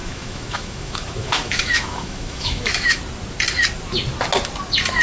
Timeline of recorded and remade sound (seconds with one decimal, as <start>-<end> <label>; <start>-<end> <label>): 0.0-3.0 remade; 3.0-5.0 recorded